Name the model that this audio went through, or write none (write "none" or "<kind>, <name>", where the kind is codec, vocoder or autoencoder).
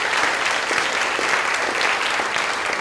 none